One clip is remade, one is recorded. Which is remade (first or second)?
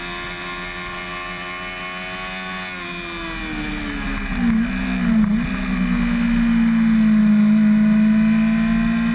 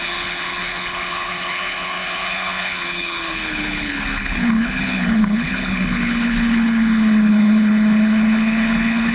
second